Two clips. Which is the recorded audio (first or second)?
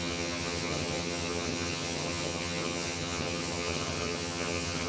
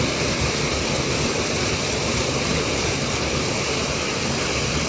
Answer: second